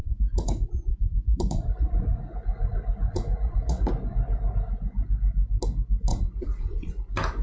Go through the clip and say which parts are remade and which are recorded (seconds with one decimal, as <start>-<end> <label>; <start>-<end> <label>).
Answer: 0.0-3.9 remade; 3.9-6.1 recorded; 6.1-6.9 remade; 6.9-7.4 recorded